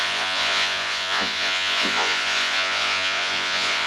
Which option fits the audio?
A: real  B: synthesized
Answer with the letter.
B